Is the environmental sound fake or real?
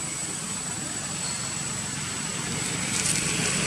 real